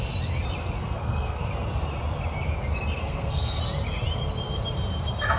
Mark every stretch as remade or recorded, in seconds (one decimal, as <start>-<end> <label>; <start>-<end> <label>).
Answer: 0.0-0.8 recorded; 0.8-1.5 remade; 1.5-3.0 recorded; 3.0-3.6 remade; 3.6-5.4 recorded